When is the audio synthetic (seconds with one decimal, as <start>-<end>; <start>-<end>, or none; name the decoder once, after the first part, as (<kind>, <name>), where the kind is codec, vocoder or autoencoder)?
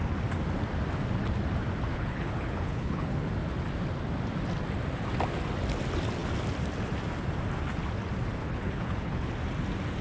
1.9-3.3 (codec, HILCodec); 8.4-9.3